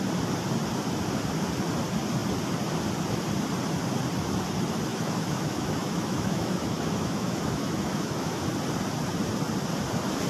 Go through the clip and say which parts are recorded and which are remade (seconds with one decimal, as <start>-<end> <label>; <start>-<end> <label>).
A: 0.0-4.9 recorded; 4.9-8.5 remade; 8.5-10.3 recorded